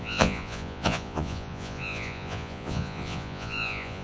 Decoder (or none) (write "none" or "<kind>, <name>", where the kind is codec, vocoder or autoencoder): vocoder, Vocos